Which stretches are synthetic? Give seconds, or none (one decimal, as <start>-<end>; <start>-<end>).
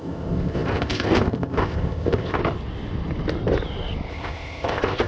0.0-2.4; 4.1-5.1